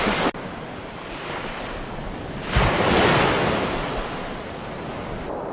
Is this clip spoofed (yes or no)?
no